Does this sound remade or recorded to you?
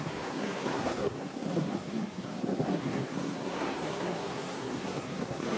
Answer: remade